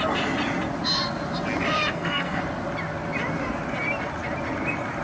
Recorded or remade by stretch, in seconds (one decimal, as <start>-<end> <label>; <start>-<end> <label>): 0.0-1.9 recorded; 1.9-2.4 remade; 2.4-5.0 recorded